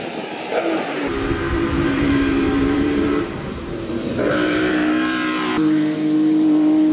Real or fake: fake